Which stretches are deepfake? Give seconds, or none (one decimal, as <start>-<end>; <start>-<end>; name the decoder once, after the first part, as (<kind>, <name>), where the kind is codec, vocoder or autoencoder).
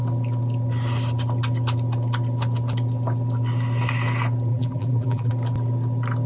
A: 4.5-5.3 (vocoder, BigVGAN v2)